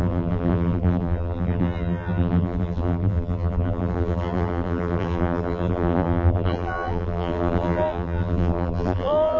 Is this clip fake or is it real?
fake